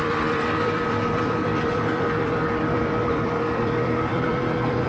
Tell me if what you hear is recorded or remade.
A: remade